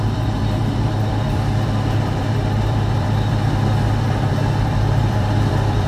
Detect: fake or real fake